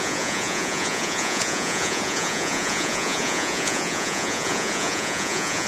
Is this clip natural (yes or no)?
no